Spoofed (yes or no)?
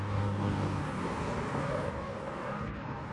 yes